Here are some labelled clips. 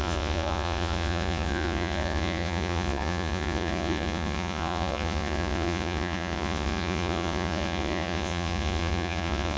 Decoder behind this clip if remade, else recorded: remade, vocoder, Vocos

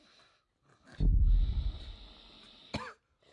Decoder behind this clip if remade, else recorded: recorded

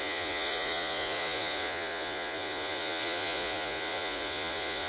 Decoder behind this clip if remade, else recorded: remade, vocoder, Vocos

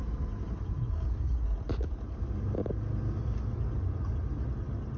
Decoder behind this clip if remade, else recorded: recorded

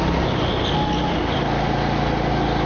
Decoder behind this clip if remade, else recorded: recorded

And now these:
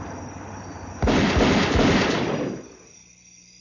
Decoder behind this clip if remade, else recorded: recorded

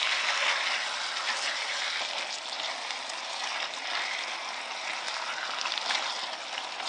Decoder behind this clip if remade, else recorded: recorded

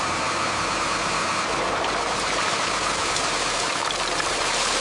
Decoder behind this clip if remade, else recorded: recorded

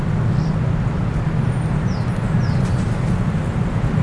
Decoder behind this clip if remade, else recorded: recorded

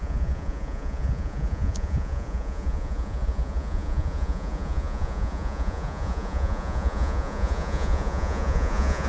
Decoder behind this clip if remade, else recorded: remade, vocoder, Vocos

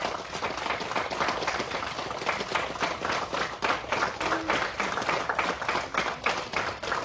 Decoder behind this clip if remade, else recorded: recorded